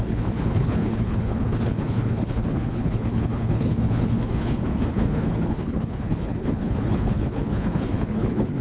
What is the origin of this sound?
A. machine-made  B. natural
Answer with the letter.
A